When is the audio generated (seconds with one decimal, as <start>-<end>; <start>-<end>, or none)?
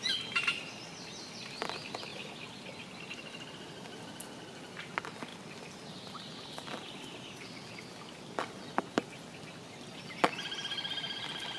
none